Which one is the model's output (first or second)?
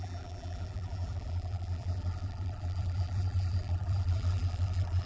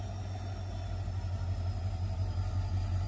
first